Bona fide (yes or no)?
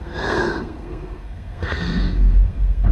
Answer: no